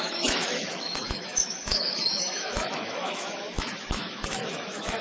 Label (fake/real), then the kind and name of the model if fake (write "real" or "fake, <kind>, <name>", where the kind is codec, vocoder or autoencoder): fake, autoencoder, DAC-VAE